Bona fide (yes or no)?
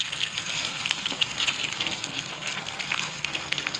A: no